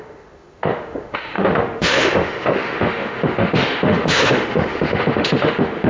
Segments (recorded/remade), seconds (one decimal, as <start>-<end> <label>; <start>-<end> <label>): 0.0-5.9 remade